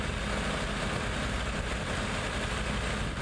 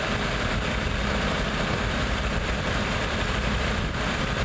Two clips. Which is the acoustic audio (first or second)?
first